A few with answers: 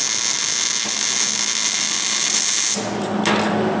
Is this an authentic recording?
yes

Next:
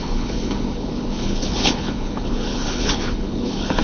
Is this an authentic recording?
no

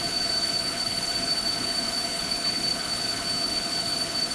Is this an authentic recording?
no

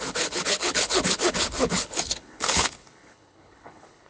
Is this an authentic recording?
no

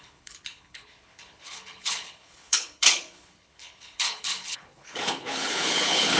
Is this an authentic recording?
no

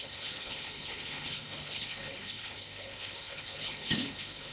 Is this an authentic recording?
no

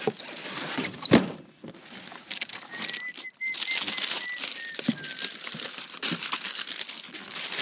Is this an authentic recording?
yes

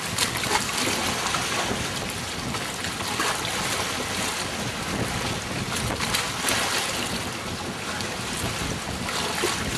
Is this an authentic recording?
yes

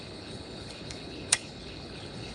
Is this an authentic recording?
no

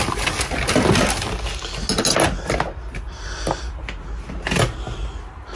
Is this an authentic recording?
yes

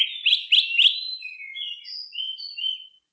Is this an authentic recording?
yes